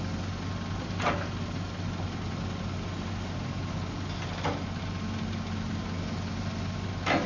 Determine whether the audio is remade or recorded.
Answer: recorded